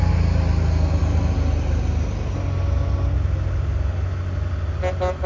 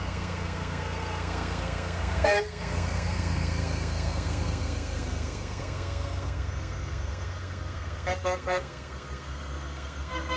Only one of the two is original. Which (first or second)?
first